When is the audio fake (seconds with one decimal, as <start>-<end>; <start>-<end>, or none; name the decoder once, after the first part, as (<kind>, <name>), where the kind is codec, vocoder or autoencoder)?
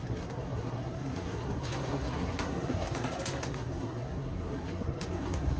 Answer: 0.0-5.6 (codec, SNAC)